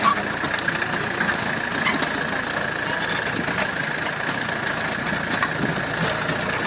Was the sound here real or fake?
real